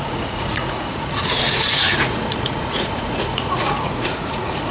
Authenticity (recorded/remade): remade